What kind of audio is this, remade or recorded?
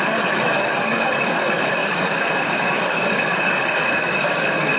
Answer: remade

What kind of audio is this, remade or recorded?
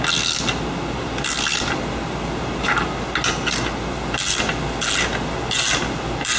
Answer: recorded